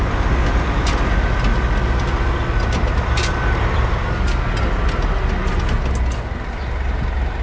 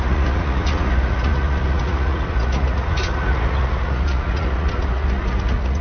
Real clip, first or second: first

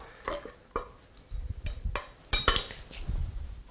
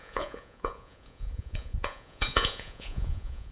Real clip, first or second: first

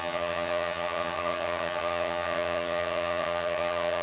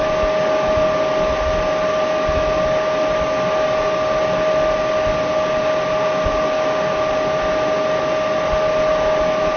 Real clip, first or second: second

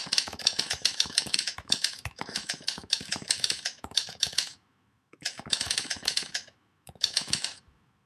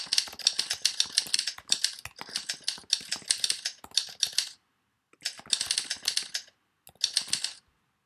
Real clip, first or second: second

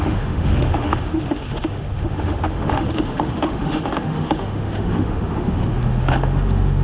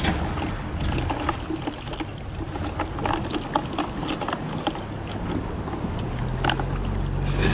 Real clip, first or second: second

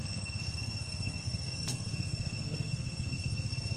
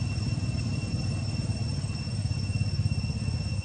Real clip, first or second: second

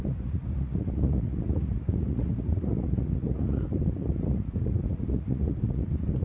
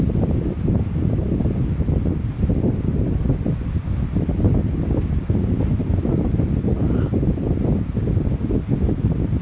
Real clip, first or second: second